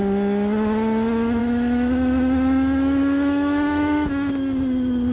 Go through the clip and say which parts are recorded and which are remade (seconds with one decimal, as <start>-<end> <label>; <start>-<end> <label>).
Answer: 0.0-1.4 recorded; 1.4-4.1 remade; 4.1-5.1 recorded